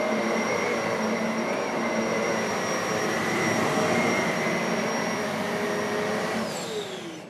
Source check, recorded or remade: recorded